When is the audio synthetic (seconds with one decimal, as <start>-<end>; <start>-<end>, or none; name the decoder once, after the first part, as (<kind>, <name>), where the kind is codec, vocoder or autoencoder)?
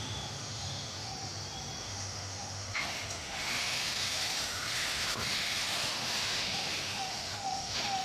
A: 0.0-1.1 (autoencoder, DAC-VAE); 1.8-8.0